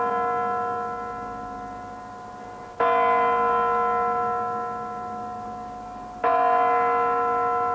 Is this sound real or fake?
real